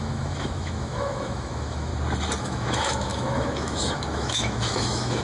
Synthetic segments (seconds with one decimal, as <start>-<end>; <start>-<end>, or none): 0.0-1.9; 2.4-5.2

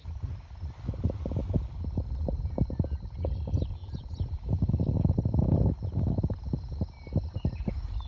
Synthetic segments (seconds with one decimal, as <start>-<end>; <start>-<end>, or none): none

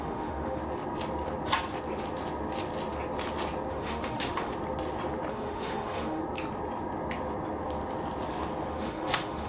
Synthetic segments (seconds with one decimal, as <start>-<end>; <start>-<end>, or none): 0.0-0.6; 3.7-4.5; 5.3-6.2; 8.7-9.5

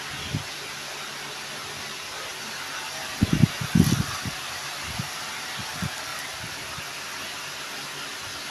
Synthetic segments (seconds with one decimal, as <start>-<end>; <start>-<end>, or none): none

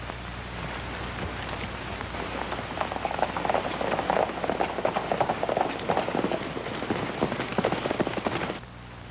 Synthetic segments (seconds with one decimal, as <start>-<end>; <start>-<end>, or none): none